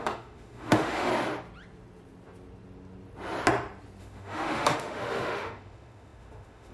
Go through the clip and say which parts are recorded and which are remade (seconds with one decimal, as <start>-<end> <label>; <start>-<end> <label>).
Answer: 0.0-1.1 remade; 1.1-4.0 recorded; 4.0-6.7 remade